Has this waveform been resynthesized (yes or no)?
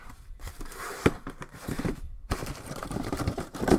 yes